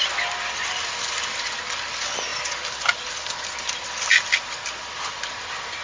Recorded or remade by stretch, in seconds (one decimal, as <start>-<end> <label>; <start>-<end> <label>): 0.0-5.8 recorded